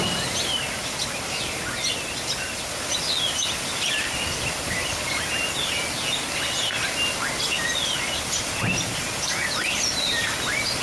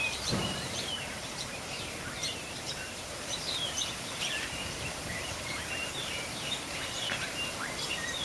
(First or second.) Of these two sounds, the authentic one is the first